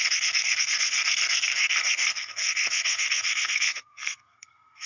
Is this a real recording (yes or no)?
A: no